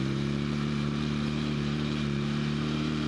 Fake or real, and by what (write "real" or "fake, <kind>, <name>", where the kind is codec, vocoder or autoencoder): fake, vocoder, BigVGAN v2